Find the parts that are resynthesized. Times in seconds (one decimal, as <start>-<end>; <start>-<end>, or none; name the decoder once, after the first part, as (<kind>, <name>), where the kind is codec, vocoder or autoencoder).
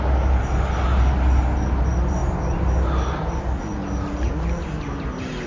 none